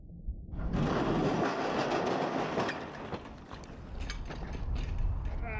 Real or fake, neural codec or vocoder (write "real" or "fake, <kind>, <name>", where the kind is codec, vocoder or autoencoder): real